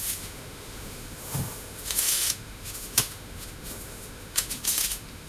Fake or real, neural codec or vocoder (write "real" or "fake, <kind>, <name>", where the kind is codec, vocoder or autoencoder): fake, autoencoder, DAC-VAE